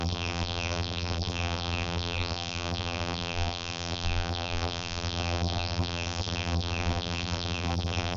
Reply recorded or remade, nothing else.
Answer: remade